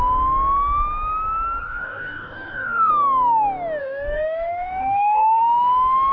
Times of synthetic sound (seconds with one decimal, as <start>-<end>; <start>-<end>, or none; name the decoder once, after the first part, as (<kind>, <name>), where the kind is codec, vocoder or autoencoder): 1.6-2.9 (codec, DAC); 3.8-5.4